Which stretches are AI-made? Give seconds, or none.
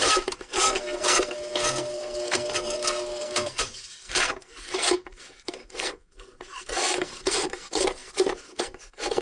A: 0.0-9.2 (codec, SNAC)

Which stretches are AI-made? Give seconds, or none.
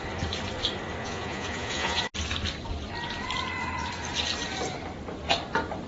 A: 1.0-2.0 (vocoder, Vocos)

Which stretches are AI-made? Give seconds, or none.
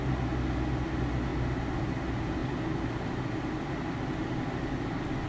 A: none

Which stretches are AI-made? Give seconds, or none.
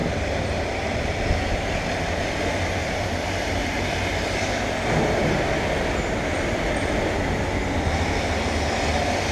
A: 0.0-1.4 (vocoder, BigVGAN v2); 2.8-3.9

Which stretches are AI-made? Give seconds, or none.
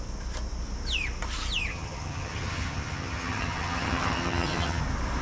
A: 1.7-4.8 (vocoder, HiFi-GAN)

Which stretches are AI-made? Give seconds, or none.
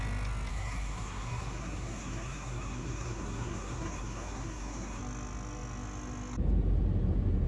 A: 0.5-5.0 (codec, SNAC)